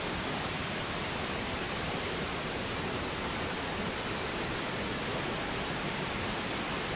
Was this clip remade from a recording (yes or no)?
no